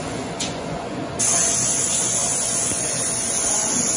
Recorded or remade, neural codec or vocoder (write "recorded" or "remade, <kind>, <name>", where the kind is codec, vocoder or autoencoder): remade, vocoder, Vocos